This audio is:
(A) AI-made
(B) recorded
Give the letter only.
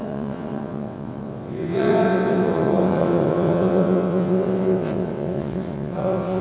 A